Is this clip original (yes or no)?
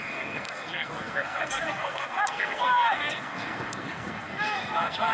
no